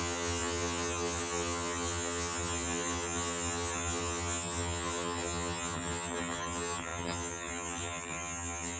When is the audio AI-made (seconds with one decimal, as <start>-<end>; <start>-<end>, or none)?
0.0-8.8